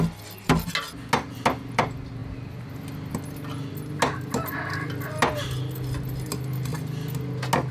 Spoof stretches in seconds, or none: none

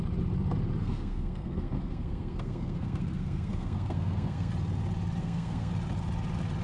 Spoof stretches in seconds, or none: 0.8-4.5 (codec, SNAC); 5.2-5.7

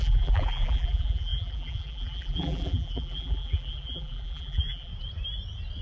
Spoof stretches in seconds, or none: 0.0-4.9 (vocoder, BigVGAN v2)

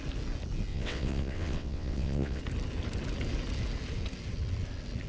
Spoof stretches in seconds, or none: 0.7-2.4 (vocoder, WaveNeXt)

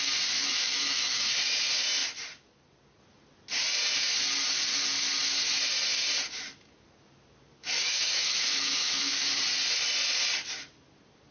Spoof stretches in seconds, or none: 0.4-1.4 (autoencoder, DAC-VAE); 7.6-9.4